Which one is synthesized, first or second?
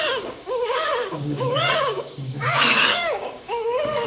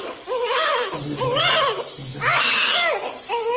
first